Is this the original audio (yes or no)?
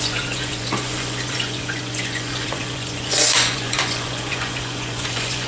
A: no